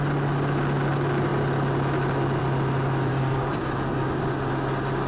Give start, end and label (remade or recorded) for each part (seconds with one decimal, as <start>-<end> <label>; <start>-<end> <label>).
0.0-3.1 recorded; 3.1-4.2 remade; 4.2-5.1 recorded